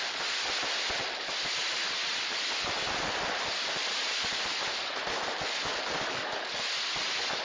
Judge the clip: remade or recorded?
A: recorded